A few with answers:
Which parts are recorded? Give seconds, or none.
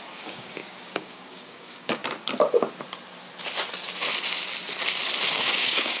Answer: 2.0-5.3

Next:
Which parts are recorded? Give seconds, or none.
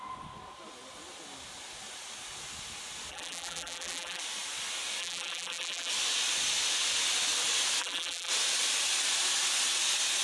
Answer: 0.0-3.1; 4.2-5.0; 5.9-7.8; 8.3-10.2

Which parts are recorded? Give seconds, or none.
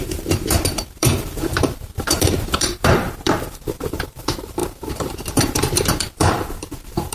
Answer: none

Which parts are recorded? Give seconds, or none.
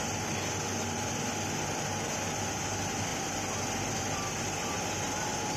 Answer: 0.0-5.6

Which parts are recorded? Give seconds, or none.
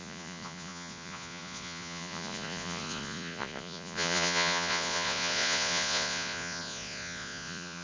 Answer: none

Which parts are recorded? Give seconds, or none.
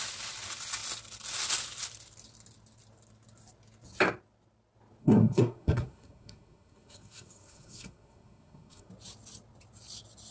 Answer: 0.0-5.0; 8.9-10.3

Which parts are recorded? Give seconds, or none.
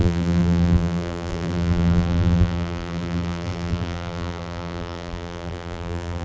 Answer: none